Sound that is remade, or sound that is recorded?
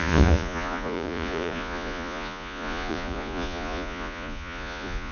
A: remade